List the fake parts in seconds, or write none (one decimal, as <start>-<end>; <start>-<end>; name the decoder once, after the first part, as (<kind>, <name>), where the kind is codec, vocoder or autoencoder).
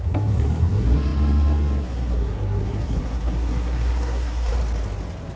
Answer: 0.0-4.5 (codec, SNAC)